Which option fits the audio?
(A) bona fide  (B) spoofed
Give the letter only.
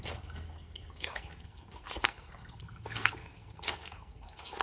B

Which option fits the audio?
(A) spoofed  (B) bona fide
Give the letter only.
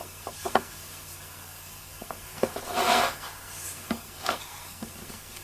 A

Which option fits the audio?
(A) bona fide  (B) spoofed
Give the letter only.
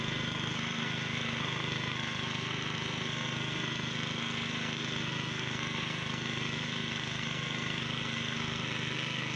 B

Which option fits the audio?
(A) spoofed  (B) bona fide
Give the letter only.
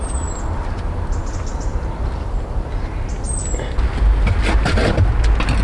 B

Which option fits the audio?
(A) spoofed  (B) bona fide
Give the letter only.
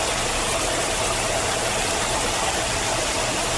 B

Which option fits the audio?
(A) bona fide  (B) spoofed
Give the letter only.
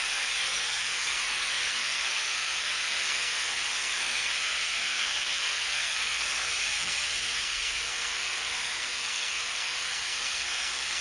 B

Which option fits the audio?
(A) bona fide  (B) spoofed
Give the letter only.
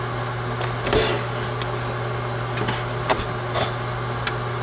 A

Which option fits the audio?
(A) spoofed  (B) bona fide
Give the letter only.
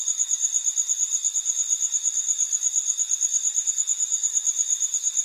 B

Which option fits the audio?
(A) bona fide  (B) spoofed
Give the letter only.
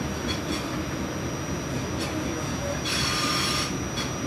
A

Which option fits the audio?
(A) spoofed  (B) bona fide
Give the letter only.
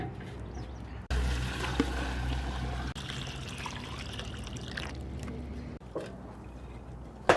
B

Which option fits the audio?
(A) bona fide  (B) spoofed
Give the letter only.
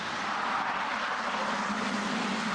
A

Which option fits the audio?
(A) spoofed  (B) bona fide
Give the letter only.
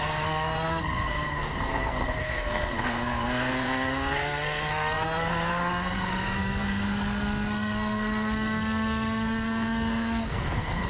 A